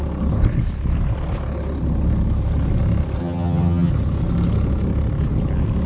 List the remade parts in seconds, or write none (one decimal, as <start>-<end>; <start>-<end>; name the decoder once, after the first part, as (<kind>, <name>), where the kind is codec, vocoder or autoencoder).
3.2-3.9 (vocoder, HiFi-GAN)